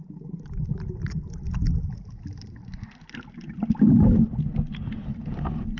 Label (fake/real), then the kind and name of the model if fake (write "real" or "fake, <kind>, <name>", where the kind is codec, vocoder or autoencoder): real